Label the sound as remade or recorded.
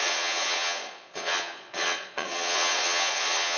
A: remade